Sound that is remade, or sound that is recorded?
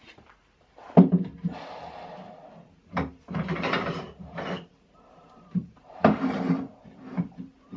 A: remade